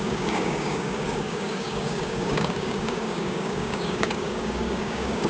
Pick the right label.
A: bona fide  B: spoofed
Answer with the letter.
B